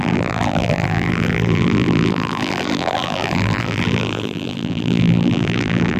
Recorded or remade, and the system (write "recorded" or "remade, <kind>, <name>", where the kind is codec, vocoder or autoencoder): remade, vocoder, BigVGAN v2